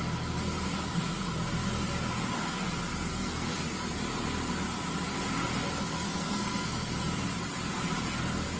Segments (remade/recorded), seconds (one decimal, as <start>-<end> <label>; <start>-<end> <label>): 0.0-3.1 recorded; 3.1-3.6 remade; 3.6-6.1 recorded; 6.1-6.9 remade; 6.9-8.6 recorded